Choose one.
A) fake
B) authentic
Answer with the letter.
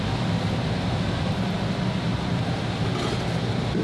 B